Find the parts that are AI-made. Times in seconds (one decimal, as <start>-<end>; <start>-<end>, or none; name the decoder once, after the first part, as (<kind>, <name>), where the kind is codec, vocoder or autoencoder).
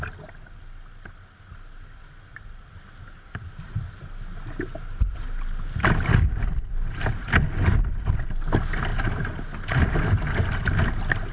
none